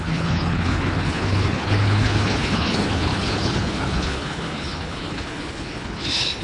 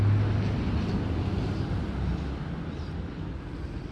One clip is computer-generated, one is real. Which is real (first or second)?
second